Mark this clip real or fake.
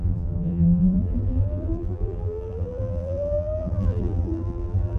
fake